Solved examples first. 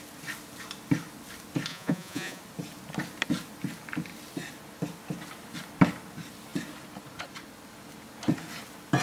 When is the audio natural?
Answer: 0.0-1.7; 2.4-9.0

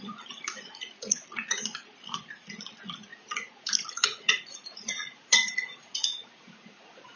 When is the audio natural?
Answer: none

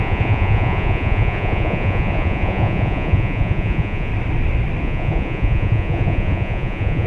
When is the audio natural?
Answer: 4.1-4.8

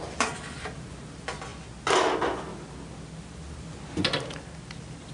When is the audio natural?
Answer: 0.0-5.1

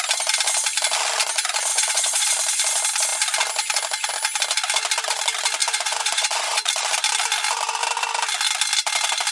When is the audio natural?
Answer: 0.0-1.7; 2.3-5.6; 6.7-9.3

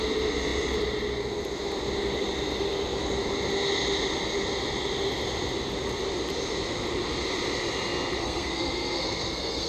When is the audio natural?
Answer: 0.0-8.2